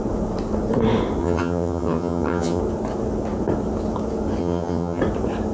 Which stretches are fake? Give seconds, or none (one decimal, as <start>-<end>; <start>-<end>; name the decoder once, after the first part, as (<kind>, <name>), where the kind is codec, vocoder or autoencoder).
1.2-2.6 (vocoder, HiFi-GAN); 4.4-5.0